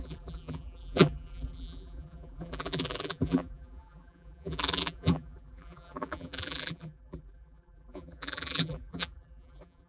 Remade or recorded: remade